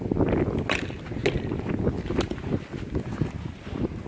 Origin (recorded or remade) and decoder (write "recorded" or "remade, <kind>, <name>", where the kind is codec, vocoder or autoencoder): recorded